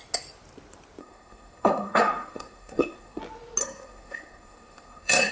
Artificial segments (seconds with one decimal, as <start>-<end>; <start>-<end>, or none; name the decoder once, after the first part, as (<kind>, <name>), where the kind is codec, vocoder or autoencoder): 1.0-3.2 (codec, SNAC); 3.6-5.3